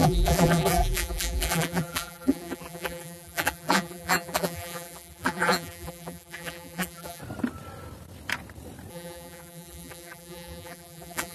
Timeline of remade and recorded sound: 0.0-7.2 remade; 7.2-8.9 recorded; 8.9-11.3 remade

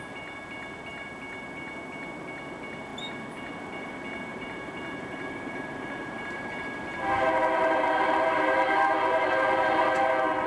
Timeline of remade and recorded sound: 0.0-4.3 recorded; 4.3-6.5 remade; 6.5-7.4 recorded; 7.4-9.8 remade; 9.8-10.5 recorded